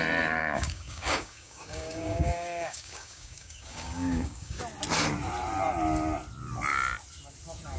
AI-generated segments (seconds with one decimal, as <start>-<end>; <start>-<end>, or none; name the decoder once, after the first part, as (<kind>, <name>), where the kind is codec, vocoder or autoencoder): 0.4-4.6 (codec, DAC)